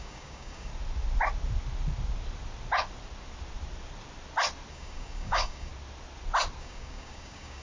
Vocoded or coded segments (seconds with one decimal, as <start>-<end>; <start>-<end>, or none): 0.0-0.7; 4.7-5.7; 6.6-7.6